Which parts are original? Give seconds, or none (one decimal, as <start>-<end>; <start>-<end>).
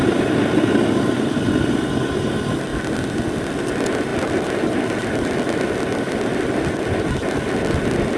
0.0-8.2